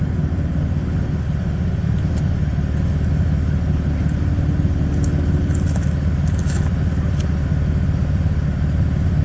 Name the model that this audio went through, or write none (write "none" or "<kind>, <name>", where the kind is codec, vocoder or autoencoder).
none